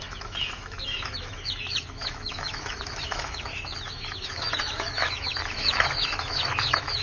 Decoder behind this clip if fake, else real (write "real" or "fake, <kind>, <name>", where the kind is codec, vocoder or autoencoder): fake, autoencoder, DAC-VAE